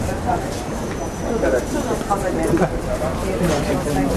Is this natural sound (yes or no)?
yes